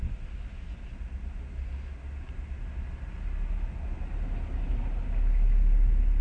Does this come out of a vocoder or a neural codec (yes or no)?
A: no